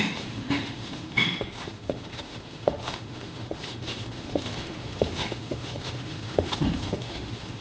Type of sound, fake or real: fake